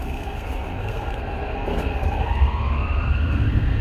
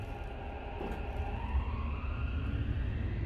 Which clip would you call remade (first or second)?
first